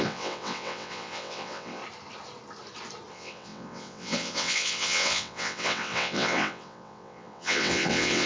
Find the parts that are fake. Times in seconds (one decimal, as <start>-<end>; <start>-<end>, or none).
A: 0.0-1.8; 3.1-8.3